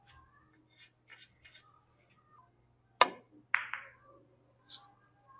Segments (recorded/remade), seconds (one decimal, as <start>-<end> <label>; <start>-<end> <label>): 0.0-5.4 recorded